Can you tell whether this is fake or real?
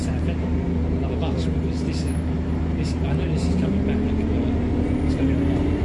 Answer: real